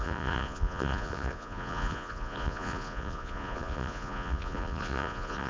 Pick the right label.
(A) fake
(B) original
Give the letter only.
A